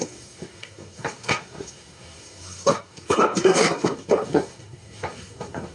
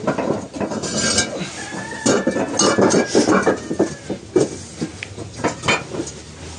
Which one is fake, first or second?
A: first